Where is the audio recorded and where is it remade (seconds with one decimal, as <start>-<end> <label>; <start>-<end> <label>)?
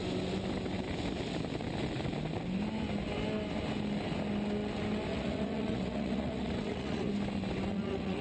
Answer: 0.0-5.1 recorded; 5.1-7.1 remade; 7.1-7.7 recorded; 7.7-8.2 remade